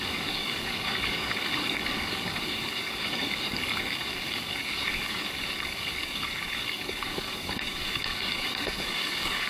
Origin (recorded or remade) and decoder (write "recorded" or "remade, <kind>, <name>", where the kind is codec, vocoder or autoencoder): remade, codec, DAC